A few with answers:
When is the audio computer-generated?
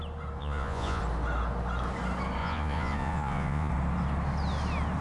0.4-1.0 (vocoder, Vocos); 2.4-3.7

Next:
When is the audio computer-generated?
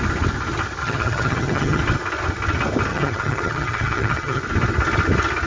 0.8-1.8 (vocoder, HiFi-GAN); 2.9-4.4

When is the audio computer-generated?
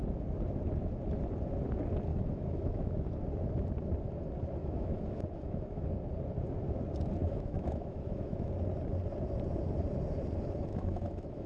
2.1-3.1 (autoencoder, DAC-VAE); 4.6-5.9; 7.2-8.5; 10.7-11.5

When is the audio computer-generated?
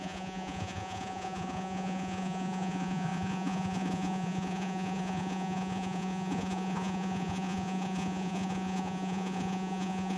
0.0-10.2 (vocoder, Vocos)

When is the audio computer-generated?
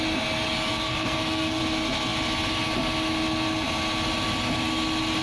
0.7-1.6 (codec, SNAC)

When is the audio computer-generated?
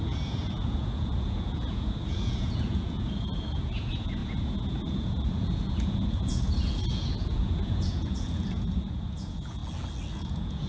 0.0-9.6 (vocoder, Vocos); 10.1-10.7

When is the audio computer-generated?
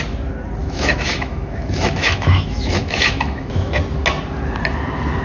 0.6-3.7 (autoencoder, DAC-VAE)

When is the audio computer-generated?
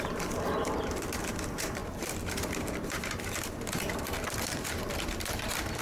0.0-5.8 (vocoder, BigVGAN v2)